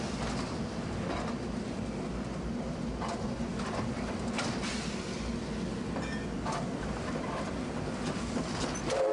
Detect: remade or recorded recorded